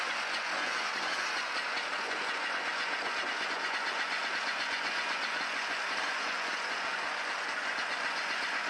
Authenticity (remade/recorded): remade